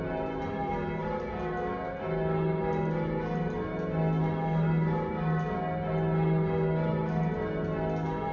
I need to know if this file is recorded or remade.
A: recorded